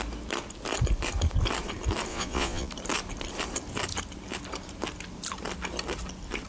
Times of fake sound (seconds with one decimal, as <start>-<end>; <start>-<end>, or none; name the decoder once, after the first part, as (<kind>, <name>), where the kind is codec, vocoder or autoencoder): 2.1-2.7 (vocoder, Vocos)